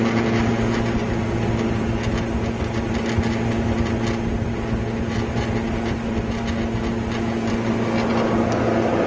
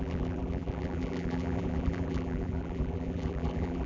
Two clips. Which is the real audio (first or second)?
first